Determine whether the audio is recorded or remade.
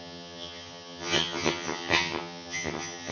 remade